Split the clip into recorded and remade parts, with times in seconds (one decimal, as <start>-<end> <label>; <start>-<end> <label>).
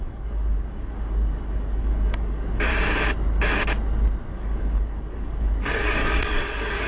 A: 0.0-2.7 remade; 2.7-4.3 recorded; 4.3-6.9 remade